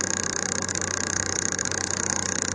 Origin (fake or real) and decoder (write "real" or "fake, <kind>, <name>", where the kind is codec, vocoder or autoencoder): fake, codec, DAC